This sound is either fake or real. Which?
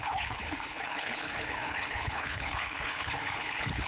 fake